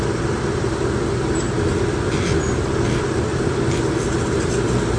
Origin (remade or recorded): recorded